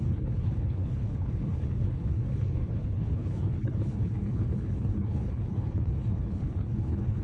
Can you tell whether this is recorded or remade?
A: remade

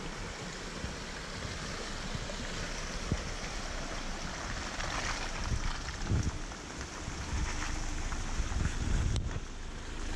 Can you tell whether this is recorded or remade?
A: recorded